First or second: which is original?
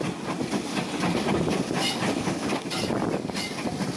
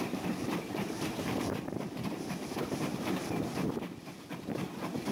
first